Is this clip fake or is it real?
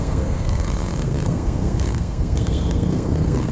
fake